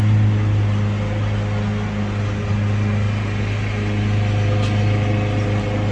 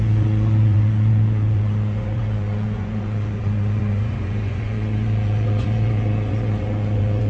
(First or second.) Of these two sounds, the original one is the first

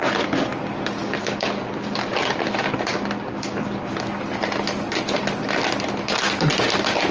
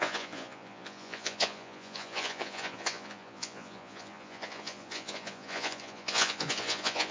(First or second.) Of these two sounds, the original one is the first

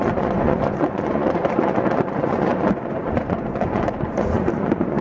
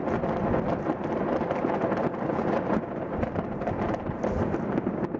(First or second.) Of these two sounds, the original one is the second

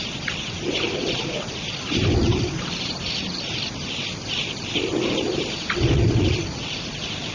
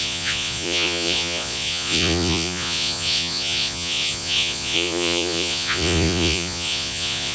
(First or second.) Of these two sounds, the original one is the first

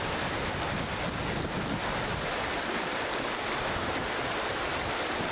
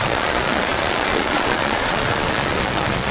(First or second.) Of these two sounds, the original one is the first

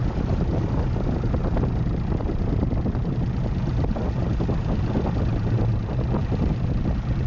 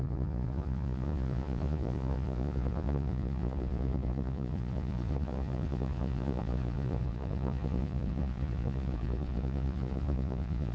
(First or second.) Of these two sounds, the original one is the first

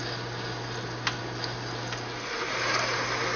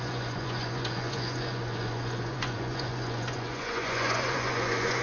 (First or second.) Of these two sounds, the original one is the first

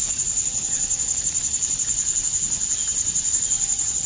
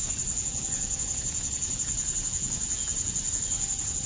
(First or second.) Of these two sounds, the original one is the first